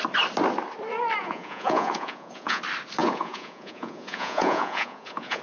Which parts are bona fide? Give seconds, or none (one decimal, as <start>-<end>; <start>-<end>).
0.0-1.2; 2.6-3.0